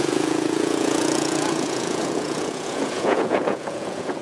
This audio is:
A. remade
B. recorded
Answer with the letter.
A